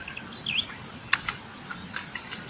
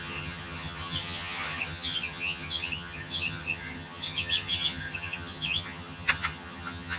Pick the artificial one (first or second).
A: second